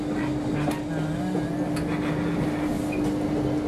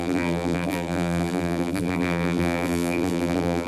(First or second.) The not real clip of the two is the second